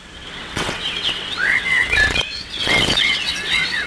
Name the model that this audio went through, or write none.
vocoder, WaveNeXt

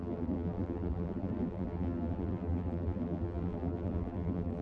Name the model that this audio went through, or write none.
vocoder, BigVGAN v2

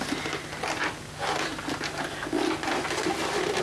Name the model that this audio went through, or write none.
none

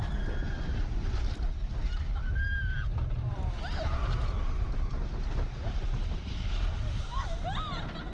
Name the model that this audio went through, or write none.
none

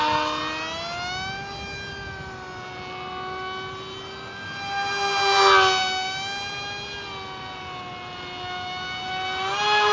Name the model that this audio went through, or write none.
none